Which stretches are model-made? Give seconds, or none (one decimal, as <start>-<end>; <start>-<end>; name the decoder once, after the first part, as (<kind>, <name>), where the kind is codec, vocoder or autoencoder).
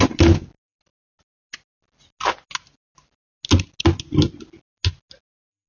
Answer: none